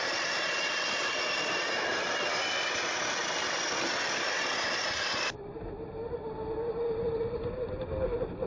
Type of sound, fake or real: real